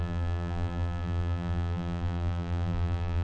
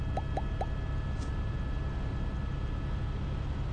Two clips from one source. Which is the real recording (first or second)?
second